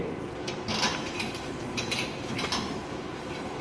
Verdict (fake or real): fake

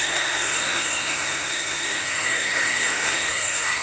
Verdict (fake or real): fake